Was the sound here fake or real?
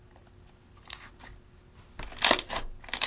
real